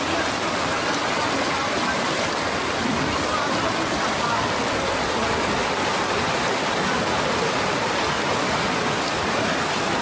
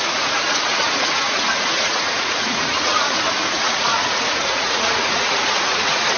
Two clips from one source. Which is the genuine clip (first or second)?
first